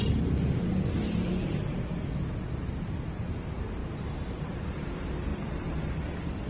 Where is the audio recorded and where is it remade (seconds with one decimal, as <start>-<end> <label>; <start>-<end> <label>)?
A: 0.0-0.7 remade; 0.7-2.0 recorded; 2.0-6.5 remade